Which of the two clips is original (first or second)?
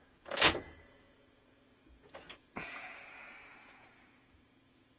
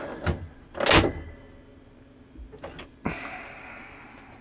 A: second